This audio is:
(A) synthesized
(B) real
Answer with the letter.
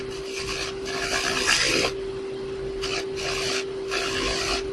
B